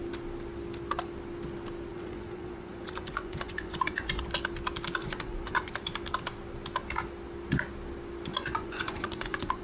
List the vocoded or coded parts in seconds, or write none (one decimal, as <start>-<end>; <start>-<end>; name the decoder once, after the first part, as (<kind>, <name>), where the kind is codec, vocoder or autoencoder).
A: 1.9-4.2 (vocoder, Vocos); 5.0-5.7; 8.3-9.6